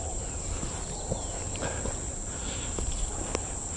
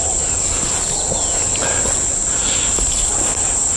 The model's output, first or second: first